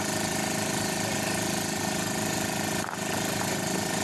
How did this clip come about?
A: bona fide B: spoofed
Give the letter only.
A